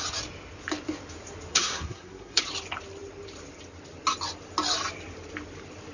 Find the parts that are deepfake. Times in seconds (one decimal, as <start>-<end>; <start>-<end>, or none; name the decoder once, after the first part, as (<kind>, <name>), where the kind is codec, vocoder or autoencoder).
1.5-2.4 (codec, SNAC)